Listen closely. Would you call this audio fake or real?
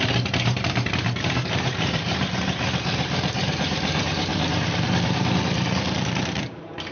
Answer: fake